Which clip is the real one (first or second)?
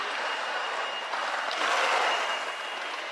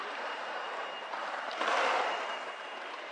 first